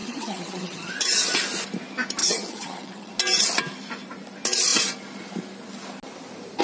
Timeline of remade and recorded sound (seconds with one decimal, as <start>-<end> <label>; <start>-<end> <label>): 0.0-0.9 remade; 0.9-2.2 recorded; 2.2-3.1 remade; 3.1-6.6 recorded